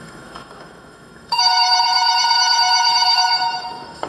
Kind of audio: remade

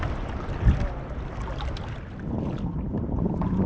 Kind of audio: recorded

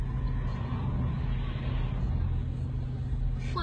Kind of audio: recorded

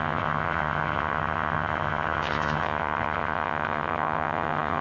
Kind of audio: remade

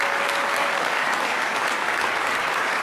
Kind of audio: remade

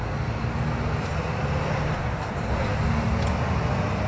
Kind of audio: recorded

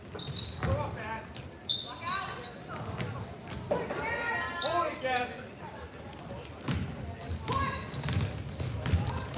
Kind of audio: recorded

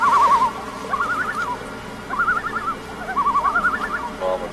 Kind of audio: recorded